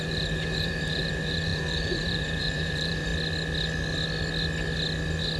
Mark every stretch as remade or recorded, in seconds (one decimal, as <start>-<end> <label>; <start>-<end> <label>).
0.0-3.1 remade; 3.1-5.4 recorded